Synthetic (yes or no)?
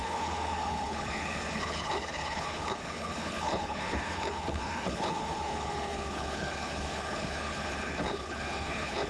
yes